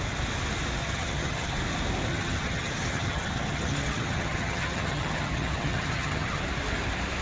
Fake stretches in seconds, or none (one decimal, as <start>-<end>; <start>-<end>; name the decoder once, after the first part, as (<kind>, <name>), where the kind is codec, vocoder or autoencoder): 0.8-1.5 (vocoder, HiFi-GAN); 2.1-6.4